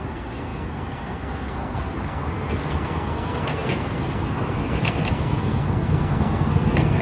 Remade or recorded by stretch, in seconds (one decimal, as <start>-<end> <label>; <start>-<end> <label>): 0.0-7.0 remade